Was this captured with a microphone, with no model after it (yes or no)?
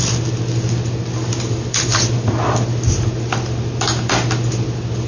yes